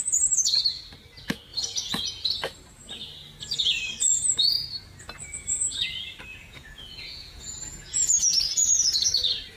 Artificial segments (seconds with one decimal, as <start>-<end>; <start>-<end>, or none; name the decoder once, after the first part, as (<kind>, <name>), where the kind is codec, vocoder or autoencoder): 6.3-8.4 (vocoder, Vocos)